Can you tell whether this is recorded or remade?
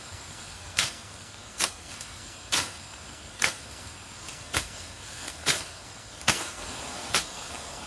remade